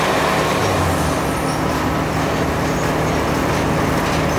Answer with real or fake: real